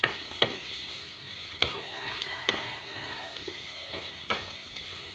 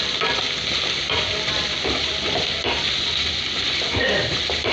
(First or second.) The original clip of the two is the second